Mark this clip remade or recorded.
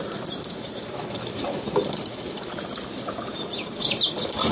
recorded